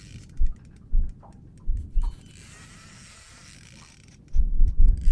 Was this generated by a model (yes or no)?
no